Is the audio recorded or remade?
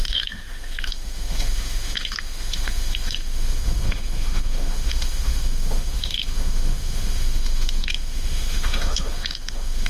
remade